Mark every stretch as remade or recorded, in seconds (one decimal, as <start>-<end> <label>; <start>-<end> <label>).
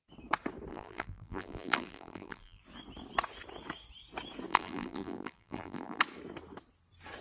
0.0-0.7 recorded; 0.7-2.6 remade; 2.6-4.5 recorded; 4.5-6.0 remade; 6.0-7.2 recorded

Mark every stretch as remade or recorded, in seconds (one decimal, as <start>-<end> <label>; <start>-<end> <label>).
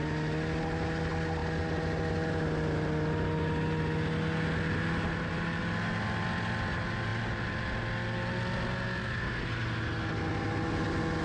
0.0-11.2 recorded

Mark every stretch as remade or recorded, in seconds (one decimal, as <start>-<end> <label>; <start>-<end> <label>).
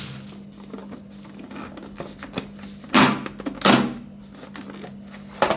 0.0-5.6 recorded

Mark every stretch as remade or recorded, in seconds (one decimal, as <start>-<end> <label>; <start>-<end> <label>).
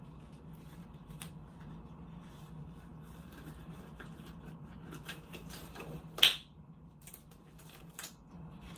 0.0-8.8 remade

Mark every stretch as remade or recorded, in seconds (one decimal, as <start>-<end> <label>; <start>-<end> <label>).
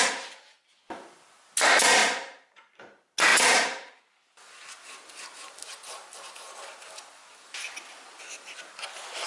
0.0-2.0 recorded; 2.0-2.8 remade; 2.8-3.3 recorded; 3.3-4.0 remade; 4.0-9.3 recorded